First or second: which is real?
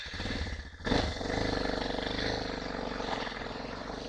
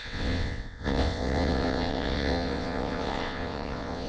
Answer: first